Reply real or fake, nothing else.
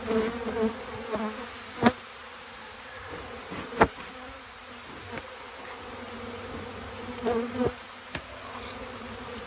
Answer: real